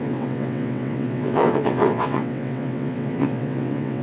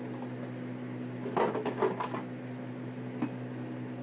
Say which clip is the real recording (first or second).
second